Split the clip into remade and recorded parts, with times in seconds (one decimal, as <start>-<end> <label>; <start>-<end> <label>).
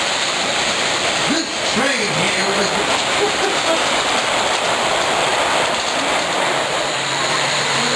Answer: 0.0-2.6 remade; 2.6-4.1 recorded; 4.1-5.3 remade; 5.3-6.9 recorded; 6.9-8.0 remade